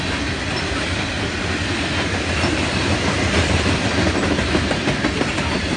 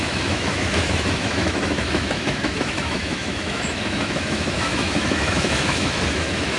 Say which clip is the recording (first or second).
first